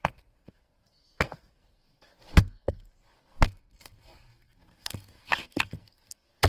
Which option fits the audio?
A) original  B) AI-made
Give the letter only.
B